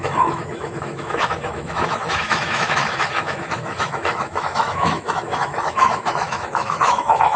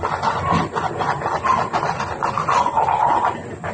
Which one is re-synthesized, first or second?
first